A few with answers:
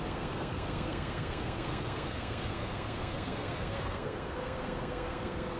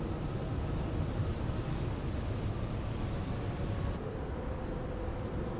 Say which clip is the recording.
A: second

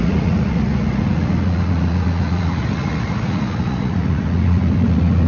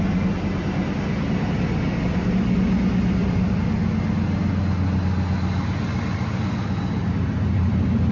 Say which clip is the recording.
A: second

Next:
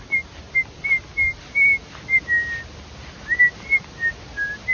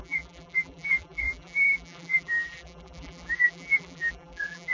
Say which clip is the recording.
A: first